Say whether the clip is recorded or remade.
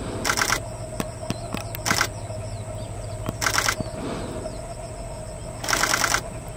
recorded